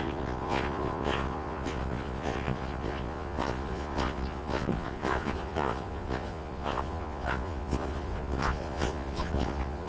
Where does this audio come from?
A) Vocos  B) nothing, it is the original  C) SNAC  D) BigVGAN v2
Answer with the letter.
A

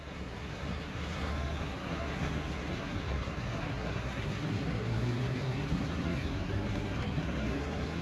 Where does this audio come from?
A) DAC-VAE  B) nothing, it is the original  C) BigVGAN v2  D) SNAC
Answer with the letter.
D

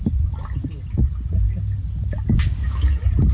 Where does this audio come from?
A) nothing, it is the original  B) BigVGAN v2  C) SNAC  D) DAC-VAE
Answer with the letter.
A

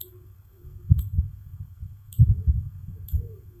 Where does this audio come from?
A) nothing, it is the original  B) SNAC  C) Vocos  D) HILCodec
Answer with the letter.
B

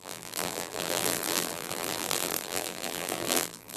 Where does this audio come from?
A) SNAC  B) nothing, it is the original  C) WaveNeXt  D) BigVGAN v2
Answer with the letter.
D